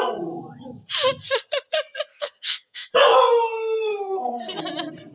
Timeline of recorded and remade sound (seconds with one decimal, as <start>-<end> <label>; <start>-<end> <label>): 0.0-2.1 recorded; 2.1-2.9 remade; 2.9-3.9 recorded; 3.9-4.6 remade; 4.6-5.1 recorded